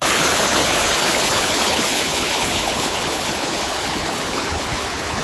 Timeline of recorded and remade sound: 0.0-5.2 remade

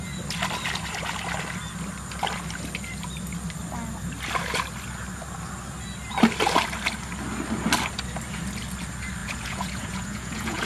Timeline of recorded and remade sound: 0.0-9.2 recorded; 9.2-10.7 remade

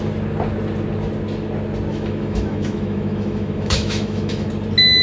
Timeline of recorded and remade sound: 0.0-1.9 recorded; 1.9-4.5 remade; 4.5-5.0 recorded

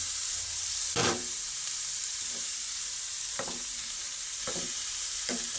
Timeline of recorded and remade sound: 0.0-5.6 remade

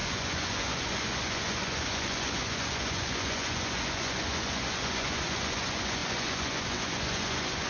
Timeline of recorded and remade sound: 0.0-7.7 remade

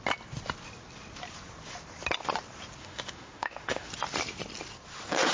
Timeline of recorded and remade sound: 0.0-2.8 recorded; 2.8-3.9 remade; 3.9-5.3 recorded